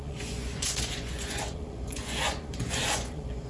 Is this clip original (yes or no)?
no